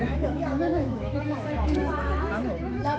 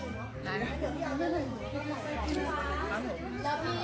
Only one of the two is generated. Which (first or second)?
first